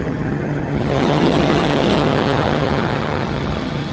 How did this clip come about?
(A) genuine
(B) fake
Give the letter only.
B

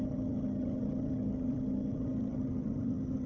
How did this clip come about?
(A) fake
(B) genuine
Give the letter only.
A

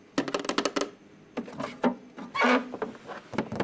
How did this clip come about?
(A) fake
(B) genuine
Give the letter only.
B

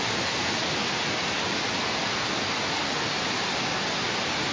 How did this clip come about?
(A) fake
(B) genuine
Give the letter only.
B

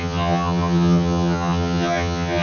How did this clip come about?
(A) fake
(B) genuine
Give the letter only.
A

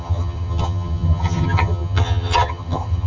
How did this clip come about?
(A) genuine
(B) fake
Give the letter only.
B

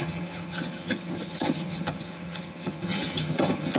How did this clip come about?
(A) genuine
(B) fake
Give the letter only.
B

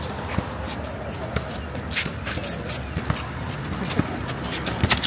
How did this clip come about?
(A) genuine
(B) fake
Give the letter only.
A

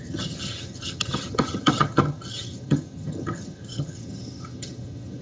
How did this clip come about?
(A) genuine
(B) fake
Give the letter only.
B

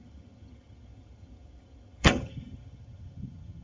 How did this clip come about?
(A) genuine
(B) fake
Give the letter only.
B